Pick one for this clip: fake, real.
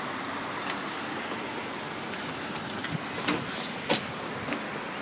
real